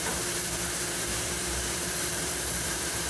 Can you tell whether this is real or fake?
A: fake